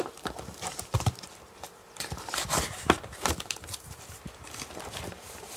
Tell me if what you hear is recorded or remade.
remade